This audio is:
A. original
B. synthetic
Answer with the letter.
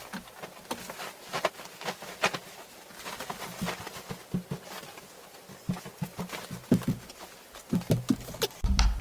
A